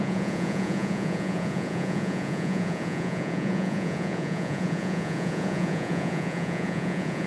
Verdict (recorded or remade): remade